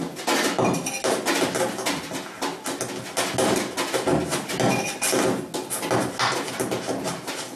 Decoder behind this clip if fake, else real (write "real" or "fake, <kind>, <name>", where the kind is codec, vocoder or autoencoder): real